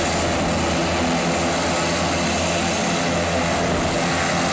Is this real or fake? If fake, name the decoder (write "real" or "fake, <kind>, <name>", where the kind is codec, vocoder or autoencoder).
real